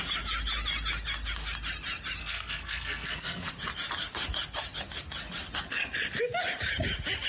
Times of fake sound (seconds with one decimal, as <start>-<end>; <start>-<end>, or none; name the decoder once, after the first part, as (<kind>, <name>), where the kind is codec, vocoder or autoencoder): 2.2-3.5 (codec, SNAC)